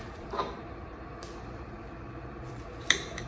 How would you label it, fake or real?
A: fake